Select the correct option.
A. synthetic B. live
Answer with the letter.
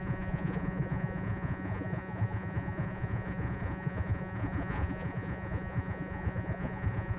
A